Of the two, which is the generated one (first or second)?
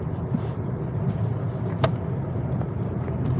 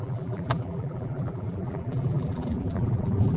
second